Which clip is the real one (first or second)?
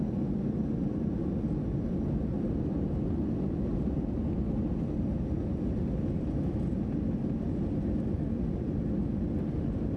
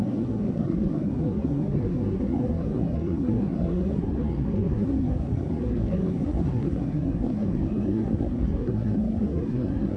first